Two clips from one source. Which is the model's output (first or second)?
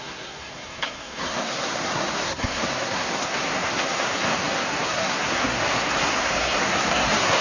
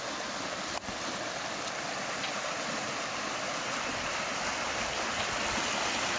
first